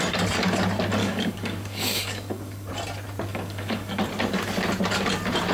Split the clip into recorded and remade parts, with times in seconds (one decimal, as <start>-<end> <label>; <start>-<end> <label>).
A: 0.0-1.0 recorded; 1.0-2.7 remade; 2.7-3.3 recorded; 3.3-4.0 remade; 4.0-5.5 recorded